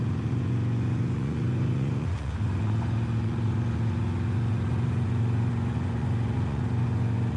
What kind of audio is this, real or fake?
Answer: fake